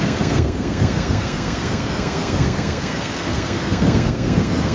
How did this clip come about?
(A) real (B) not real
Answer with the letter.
B